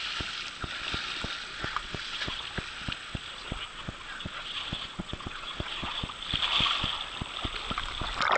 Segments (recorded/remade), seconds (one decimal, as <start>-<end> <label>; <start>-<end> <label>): 0.0-1.5 recorded; 1.5-2.4 remade; 2.4-3.7 recorded; 3.7-6.0 remade; 6.0-8.4 recorded